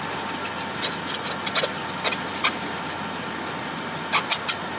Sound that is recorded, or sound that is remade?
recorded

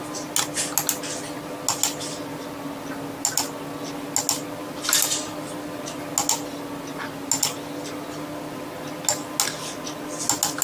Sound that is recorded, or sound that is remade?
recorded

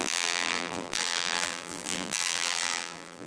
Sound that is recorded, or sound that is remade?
remade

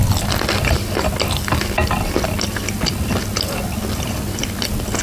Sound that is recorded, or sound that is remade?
recorded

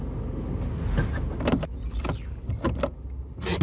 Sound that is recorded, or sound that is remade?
recorded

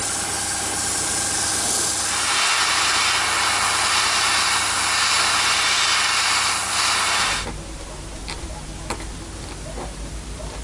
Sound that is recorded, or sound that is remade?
recorded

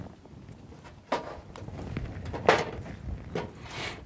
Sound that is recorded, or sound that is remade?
remade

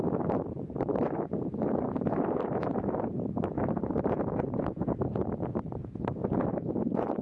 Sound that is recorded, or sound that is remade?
remade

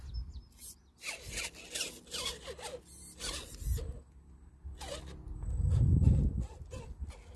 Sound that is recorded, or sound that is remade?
recorded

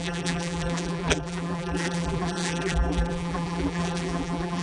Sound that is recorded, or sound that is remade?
remade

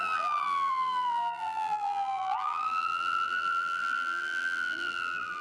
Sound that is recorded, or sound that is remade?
remade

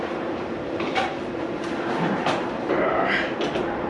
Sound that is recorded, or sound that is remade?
remade